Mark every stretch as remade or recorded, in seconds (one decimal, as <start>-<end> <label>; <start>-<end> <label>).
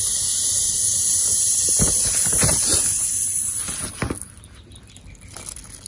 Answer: 0.0-5.9 recorded